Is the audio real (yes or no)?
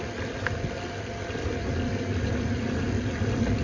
yes